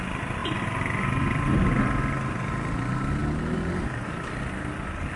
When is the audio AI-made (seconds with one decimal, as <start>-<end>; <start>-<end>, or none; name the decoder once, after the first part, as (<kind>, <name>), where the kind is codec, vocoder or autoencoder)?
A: none